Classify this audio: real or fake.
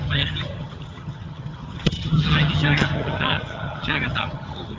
fake